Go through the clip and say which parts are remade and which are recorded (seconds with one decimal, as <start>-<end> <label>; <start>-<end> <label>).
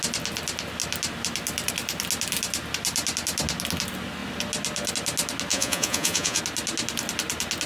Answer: 0.0-5.5 recorded; 5.5-6.4 remade; 6.4-7.7 recorded